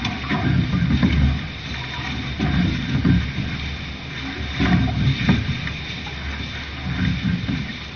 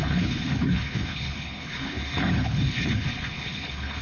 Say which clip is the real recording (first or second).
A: first